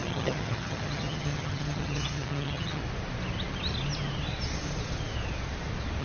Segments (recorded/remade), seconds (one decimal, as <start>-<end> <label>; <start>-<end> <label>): 0.0-2.8 remade; 2.8-6.0 recorded